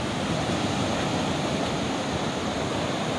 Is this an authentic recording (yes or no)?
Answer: yes